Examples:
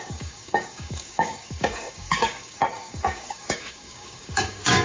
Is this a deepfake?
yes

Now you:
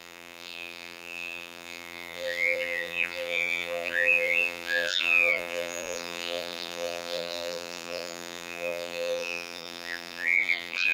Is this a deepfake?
yes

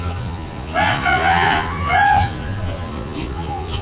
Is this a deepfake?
yes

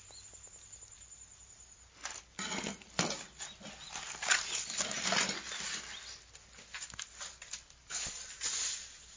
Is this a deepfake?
no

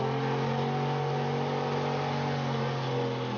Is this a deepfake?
no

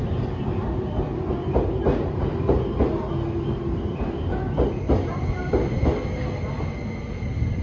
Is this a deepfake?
no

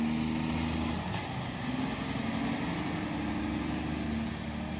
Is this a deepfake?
no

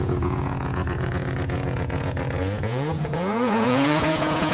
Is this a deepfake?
yes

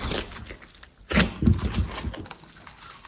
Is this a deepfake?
no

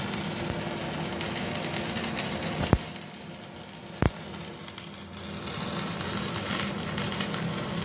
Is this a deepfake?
no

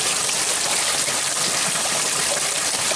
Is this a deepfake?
no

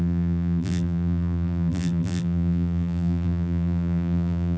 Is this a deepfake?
yes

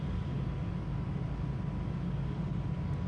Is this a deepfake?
no